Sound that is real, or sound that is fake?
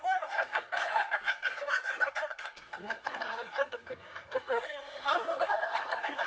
fake